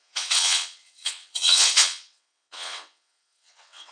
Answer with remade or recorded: remade